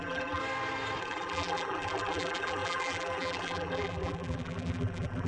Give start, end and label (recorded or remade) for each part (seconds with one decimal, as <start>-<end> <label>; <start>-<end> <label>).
0.0-0.4 remade; 0.4-1.0 recorded; 1.0-5.3 remade